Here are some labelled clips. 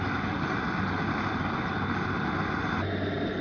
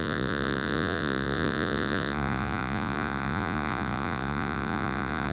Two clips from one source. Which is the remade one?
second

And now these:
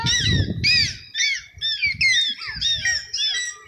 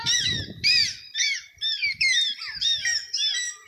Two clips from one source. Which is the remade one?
second